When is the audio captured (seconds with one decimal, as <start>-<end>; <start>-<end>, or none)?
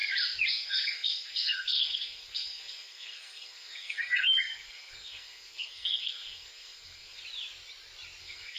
0.0-0.5; 7.2-8.2